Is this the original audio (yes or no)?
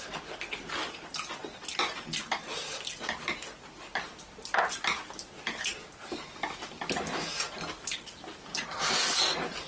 yes